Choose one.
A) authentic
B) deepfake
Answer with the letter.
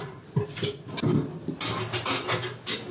A